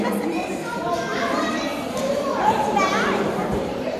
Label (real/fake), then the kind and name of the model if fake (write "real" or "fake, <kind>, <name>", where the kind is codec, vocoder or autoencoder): fake, vocoder, BigVGAN v2